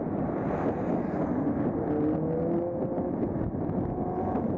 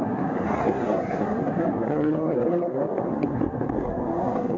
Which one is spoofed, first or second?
second